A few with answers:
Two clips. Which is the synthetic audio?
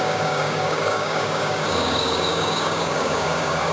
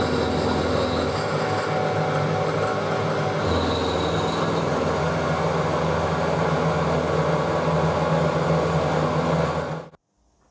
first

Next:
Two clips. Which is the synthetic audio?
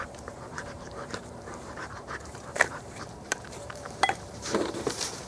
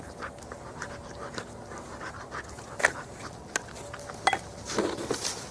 first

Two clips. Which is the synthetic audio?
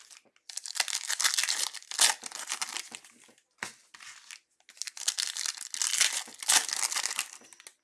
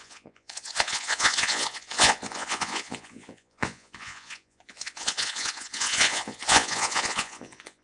second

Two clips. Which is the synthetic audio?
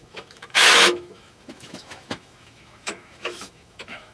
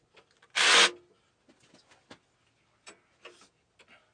first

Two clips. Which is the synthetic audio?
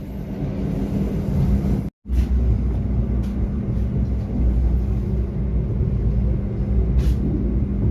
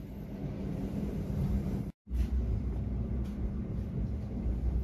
second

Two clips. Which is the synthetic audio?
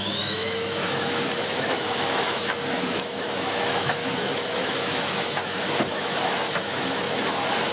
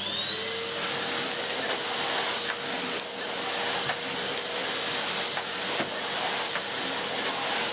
first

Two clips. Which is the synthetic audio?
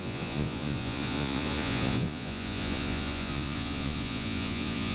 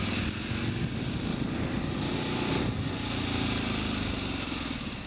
first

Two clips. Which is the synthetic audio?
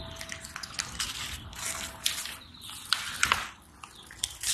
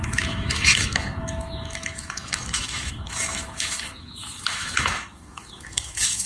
second